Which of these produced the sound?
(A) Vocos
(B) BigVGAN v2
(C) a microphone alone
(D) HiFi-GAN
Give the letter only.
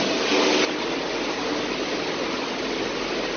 C